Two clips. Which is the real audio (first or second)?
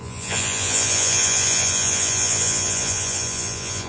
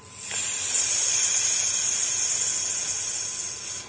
second